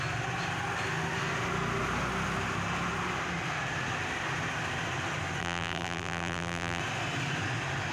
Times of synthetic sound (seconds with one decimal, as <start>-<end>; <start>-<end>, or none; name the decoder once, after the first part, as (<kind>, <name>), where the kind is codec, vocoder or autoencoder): 5.4-6.8 (vocoder, BigVGAN v2)